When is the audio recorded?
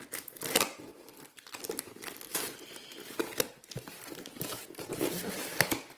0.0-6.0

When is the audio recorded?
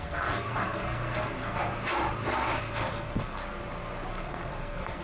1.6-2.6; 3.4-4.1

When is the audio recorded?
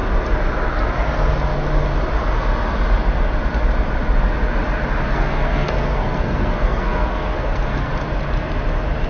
0.0-5.0; 7.9-9.1